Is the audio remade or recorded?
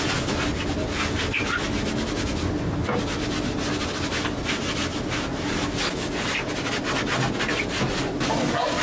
recorded